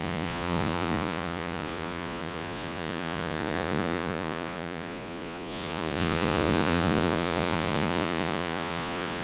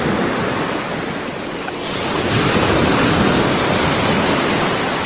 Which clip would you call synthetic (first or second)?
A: first